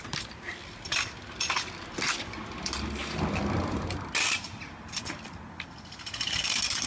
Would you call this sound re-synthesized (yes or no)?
no